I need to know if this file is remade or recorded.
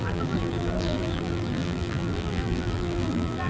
remade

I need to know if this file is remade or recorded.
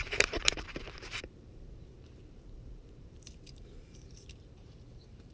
remade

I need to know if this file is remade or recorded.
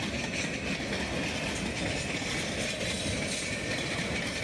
recorded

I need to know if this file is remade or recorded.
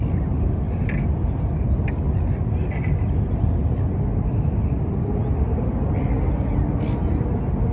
recorded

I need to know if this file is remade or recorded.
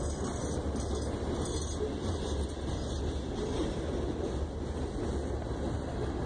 recorded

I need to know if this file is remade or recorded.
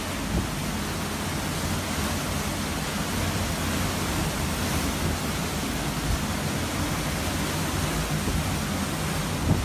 recorded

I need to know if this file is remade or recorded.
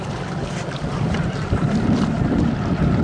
remade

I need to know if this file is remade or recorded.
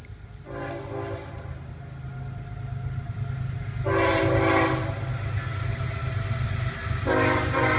recorded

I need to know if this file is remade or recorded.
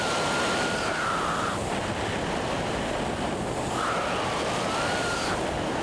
recorded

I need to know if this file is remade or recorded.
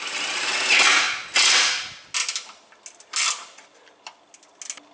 recorded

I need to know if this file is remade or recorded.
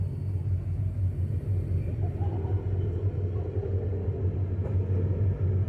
recorded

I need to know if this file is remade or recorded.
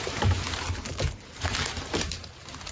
remade